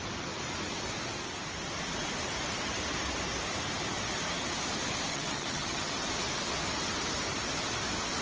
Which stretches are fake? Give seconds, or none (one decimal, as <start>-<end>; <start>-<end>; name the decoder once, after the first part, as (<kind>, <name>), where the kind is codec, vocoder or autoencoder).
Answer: 5.1-5.9 (vocoder, HiFi-GAN)